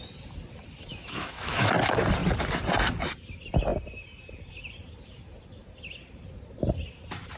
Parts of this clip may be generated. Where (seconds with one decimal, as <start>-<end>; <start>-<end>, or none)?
0.9-1.7